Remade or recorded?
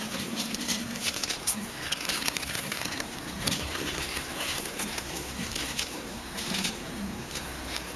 remade